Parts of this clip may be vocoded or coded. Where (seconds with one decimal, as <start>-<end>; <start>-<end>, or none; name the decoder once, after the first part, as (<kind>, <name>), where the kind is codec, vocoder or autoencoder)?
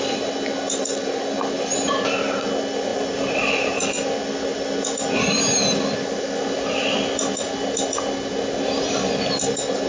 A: none